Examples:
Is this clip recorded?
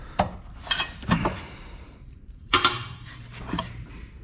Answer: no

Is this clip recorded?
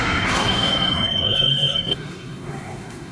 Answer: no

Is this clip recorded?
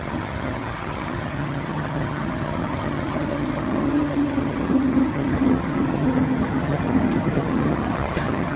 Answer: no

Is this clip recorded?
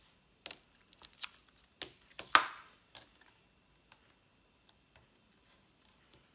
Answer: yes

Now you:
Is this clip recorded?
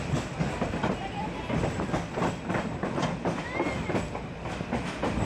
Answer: yes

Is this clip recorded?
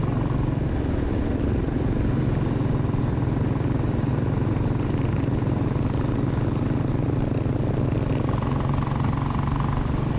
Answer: yes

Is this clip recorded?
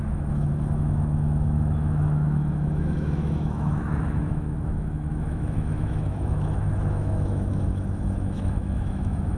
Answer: no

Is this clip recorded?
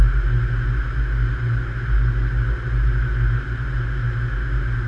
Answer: yes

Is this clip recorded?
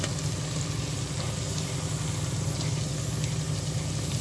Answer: yes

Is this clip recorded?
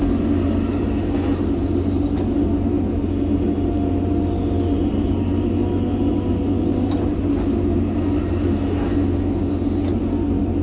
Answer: yes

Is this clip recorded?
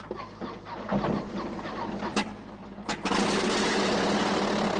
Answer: yes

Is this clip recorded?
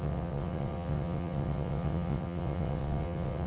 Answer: no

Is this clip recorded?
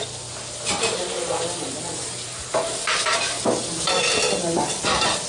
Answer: yes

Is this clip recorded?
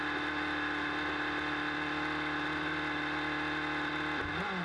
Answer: yes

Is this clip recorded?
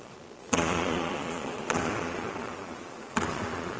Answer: no